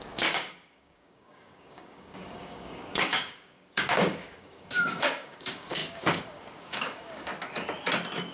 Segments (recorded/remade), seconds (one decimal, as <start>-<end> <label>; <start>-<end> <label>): 0.0-7.3 remade; 7.3-8.3 recorded